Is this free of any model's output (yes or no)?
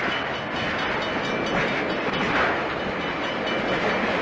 yes